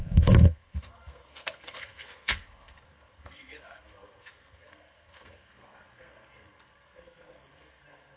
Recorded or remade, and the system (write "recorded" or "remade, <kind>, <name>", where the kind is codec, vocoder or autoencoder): remade, codec, SNAC